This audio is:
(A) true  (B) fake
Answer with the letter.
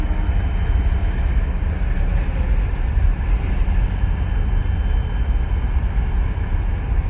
A